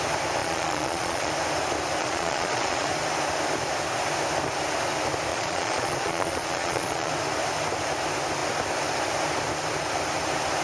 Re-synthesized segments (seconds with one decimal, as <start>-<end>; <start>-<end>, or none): 0.4-1.3; 2.0-2.9; 5.3-7.1

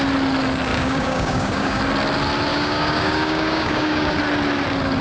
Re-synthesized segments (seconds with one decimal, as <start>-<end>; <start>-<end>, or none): 0.7-1.8; 2.5-4.2